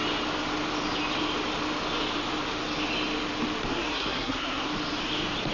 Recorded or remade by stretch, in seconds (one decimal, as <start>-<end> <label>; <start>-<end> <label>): 0.0-3.7 recorded; 3.7-4.7 remade; 4.7-5.5 recorded

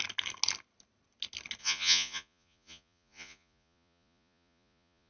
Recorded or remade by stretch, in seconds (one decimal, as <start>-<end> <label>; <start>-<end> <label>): 0.0-1.6 recorded; 1.6-5.1 remade